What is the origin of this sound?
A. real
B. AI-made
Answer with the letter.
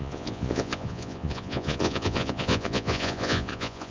B